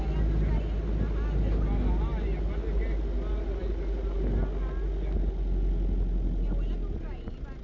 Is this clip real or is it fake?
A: real